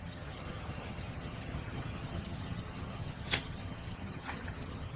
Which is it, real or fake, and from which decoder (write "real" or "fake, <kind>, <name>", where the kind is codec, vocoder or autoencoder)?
fake, vocoder, HiFi-GAN